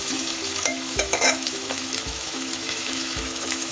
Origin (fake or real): fake